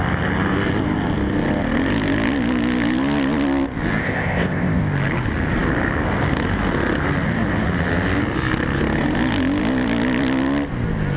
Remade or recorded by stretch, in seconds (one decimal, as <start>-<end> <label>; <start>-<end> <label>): 0.0-4.0 recorded; 4.0-4.8 remade; 4.8-11.2 recorded